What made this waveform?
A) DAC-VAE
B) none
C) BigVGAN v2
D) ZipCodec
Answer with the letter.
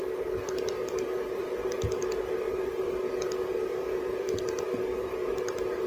B